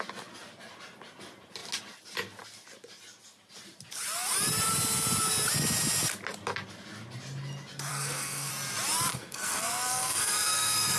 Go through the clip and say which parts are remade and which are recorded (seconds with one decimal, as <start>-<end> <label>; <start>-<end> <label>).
0.0-7.9 recorded; 7.9-8.5 remade; 8.5-9.1 recorded; 9.1-11.0 remade